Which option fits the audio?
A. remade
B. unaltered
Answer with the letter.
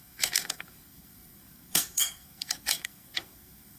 A